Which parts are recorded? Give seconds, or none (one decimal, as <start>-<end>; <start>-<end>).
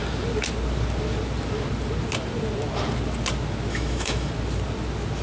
0.0-3.7; 4.3-5.2